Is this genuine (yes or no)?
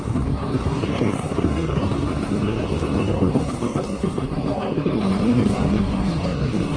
no